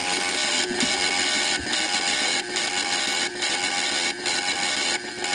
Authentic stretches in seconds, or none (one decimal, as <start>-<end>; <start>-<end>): 0.0-5.3

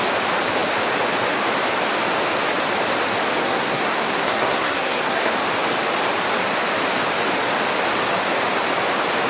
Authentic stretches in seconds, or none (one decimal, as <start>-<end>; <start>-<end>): 0.0-3.4; 5.3-9.3

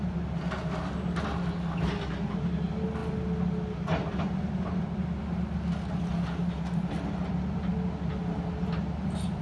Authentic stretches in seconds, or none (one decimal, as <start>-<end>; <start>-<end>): 0.0-9.4